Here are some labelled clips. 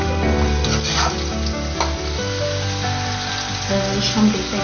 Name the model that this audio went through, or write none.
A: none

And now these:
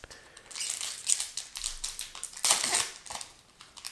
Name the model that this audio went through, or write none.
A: none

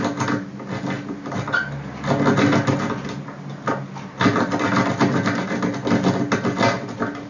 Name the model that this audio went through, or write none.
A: none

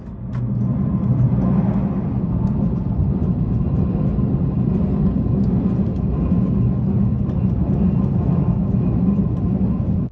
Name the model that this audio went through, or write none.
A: none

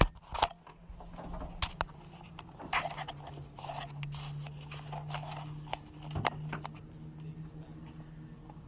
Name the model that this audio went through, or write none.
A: none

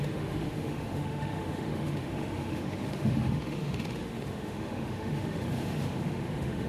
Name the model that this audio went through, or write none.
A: autoencoder, DAC-VAE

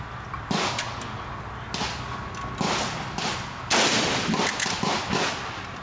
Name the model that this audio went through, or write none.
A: none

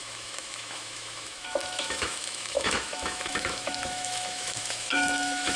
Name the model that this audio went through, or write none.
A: autoencoder, DAC-VAE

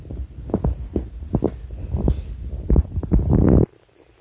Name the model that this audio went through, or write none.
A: none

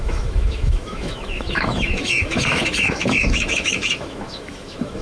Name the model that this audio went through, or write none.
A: autoencoder, DAC-VAE